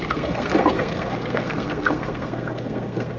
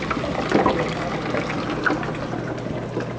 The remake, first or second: first